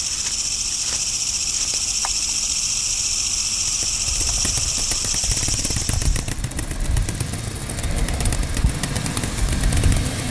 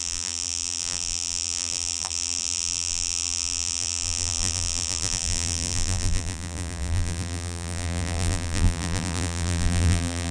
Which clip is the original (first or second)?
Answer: first